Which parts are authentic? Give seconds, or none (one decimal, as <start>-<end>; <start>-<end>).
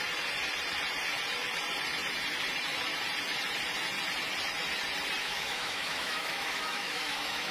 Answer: 0.0-5.2